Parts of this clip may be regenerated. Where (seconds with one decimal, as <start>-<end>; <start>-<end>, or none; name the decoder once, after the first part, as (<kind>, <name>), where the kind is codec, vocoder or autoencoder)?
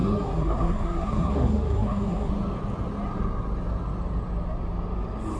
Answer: 0.0-2.3 (codec, SNAC)